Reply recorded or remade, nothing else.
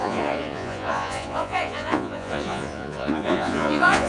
remade